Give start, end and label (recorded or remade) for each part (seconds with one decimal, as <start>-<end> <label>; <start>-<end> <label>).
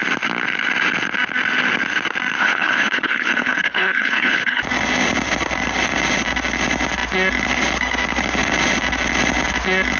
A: 0.0-2.4 recorded; 2.4-4.6 remade; 4.6-10.0 recorded